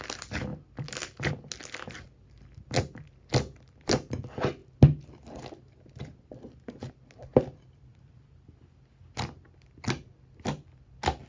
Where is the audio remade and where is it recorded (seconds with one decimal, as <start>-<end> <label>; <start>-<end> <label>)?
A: 0.0-11.3 recorded